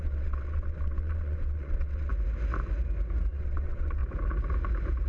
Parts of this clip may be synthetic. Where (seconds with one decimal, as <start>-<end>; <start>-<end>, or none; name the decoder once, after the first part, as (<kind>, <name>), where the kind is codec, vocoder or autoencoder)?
0.0-2.1 (vocoder, WaveNeXt); 3.3-4.0